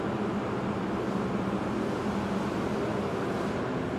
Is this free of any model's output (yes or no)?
yes